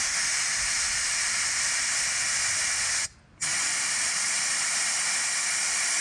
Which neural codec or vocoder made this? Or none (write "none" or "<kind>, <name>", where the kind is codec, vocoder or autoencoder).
none